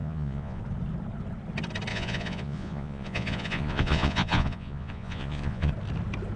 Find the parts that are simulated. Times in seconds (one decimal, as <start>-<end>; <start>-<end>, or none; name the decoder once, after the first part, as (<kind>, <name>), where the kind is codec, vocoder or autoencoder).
0.0-0.6 (vocoder, Vocos); 1.9-5.7